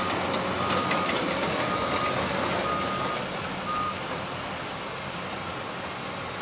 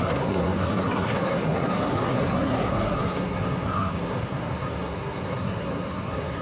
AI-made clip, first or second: second